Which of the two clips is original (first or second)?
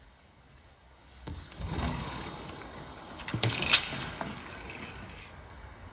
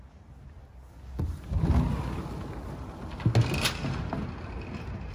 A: second